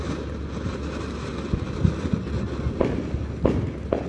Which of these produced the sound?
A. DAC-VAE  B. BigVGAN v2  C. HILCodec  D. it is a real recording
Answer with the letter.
D